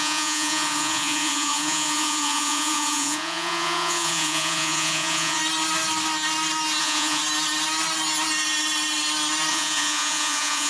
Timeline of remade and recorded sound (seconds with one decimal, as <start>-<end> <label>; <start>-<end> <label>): 0.0-5.4 remade; 5.4-6.8 recorded; 6.8-7.2 remade; 7.2-9.5 recorded; 9.5-10.7 remade